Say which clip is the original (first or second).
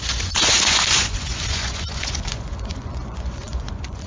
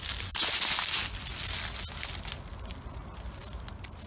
second